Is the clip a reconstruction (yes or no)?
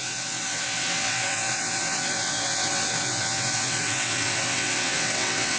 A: yes